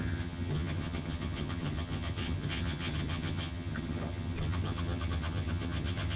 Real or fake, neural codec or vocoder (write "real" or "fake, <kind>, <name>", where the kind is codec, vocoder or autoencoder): fake, vocoder, HiFi-GAN